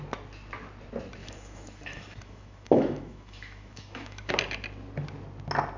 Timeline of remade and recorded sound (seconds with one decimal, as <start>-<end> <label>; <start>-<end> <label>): 0.0-1.2 recorded; 1.2-4.3 remade; 4.3-5.8 recorded